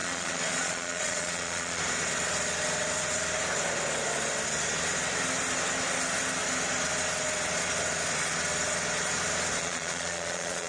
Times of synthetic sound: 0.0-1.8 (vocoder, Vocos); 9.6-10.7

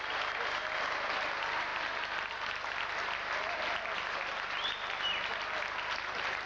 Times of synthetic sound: none

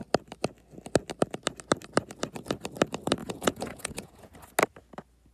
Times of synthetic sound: 3.2-4.3 (vocoder, Vocos)

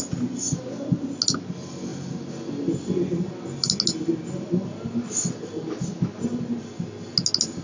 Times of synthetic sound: none

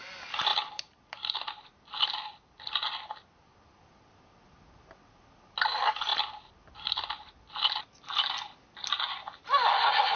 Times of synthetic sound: none

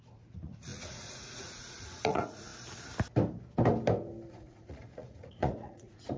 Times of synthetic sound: 0.0-2.5 (vocoder, Vocos); 4.3-6.2